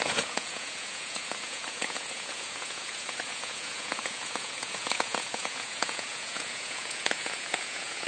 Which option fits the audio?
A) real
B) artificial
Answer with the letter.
B